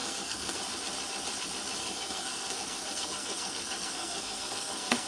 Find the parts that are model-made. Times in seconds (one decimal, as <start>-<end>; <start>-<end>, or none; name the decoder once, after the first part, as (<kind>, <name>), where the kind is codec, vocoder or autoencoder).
0.0-0.6 (codec, SNAC); 1.8-5.1

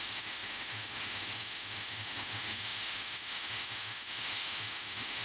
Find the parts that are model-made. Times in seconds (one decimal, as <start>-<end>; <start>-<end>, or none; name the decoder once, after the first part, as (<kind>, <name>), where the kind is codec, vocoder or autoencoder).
0.0-5.2 (autoencoder, DAC-VAE)